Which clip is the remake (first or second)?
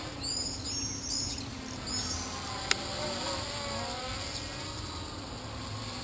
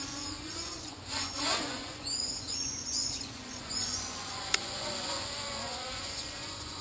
second